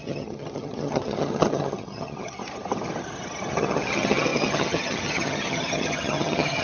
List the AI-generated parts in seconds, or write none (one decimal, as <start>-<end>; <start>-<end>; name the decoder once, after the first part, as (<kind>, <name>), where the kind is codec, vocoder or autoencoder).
0.0-2.4 (vocoder, HiFi-GAN); 3.5-6.6